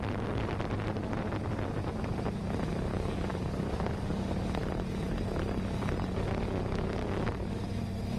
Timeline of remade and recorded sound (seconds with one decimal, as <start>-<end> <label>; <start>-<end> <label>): 0.0-2.9 recorded; 2.9-4.7 remade; 4.7-7.0 recorded; 7.0-7.6 remade; 7.6-8.2 recorded